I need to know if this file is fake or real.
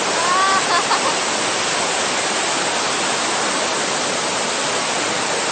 fake